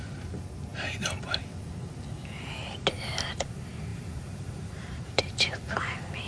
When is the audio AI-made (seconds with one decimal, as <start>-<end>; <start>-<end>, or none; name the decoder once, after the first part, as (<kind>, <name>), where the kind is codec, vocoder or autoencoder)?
3.9-5.2 (vocoder, BigVGAN v2)